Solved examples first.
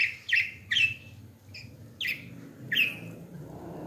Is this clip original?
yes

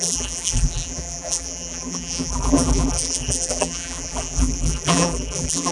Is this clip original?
no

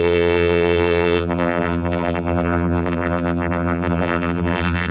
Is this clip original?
no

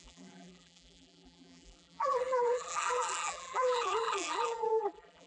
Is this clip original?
no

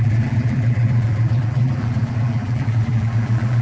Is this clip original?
no